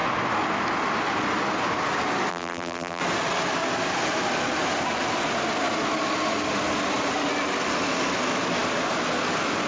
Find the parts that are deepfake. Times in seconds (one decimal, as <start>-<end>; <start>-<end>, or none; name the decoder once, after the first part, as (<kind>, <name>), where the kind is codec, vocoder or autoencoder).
2.3-3.0 (vocoder, BigVGAN v2)